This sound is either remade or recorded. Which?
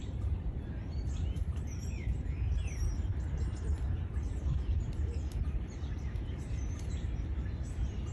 remade